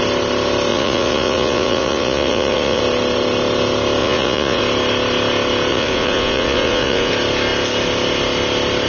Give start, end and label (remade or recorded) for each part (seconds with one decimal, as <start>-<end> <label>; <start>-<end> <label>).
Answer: 0.0-0.7 recorded; 0.7-2.8 remade; 2.8-4.0 recorded; 4.0-4.6 remade; 4.6-5.7 recorded; 5.7-7.1 remade; 7.1-8.9 recorded